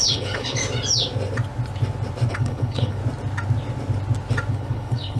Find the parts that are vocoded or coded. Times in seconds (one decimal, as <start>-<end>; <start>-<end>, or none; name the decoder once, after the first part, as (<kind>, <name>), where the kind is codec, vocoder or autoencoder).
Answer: 0.0-0.6 (codec, HILCodec); 2.3-3.0; 4.5-5.2